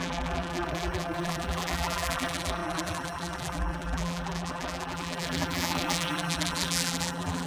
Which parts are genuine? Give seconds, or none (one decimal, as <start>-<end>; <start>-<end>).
none